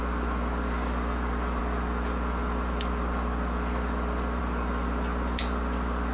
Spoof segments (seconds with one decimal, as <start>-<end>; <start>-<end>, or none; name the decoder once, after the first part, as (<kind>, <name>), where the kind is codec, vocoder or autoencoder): none